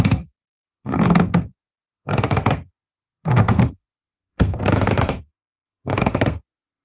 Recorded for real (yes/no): no